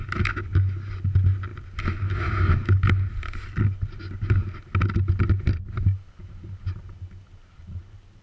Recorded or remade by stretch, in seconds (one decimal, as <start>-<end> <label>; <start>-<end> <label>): 0.0-8.2 recorded